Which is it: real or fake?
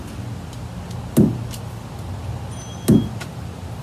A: real